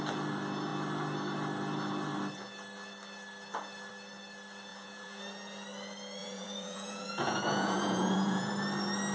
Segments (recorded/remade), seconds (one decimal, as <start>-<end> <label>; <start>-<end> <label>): 0.0-4.7 recorded; 4.7-5.2 remade; 5.2-6.2 recorded; 6.2-8.5 remade; 8.5-9.1 recorded